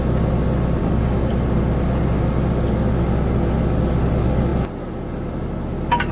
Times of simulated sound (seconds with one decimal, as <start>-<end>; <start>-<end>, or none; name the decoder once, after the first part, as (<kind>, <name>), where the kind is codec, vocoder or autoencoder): 0.8-1.3 (codec, DAC)

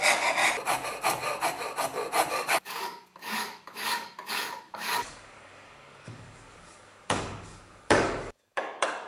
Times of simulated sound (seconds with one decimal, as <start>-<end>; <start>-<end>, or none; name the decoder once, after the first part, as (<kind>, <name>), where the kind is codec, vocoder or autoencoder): 0.0-0.4 (codec, DAC); 2.3-9.1

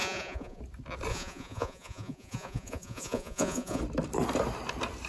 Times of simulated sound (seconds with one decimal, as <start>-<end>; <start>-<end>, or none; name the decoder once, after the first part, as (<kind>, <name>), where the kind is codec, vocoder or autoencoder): 0.0-0.6 (vocoder, Vocos); 1.1-3.8